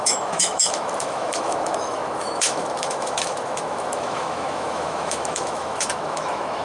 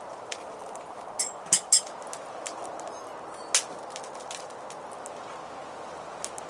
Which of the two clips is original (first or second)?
second